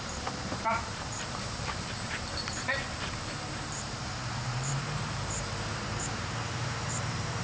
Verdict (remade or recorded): remade